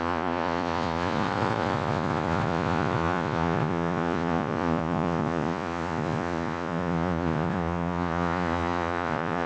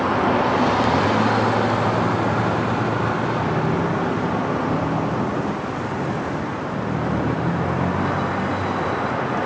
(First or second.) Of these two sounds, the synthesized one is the first